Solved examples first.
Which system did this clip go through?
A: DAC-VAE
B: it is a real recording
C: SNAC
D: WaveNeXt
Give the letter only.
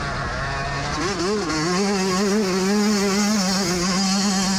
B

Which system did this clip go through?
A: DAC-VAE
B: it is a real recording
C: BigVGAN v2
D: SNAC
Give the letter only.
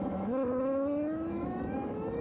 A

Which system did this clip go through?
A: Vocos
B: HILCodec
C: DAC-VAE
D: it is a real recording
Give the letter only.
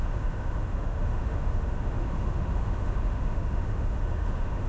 C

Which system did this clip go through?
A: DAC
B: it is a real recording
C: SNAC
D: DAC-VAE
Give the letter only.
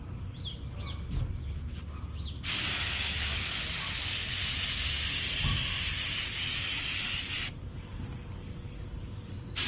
B